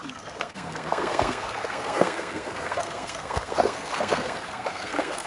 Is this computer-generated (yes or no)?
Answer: yes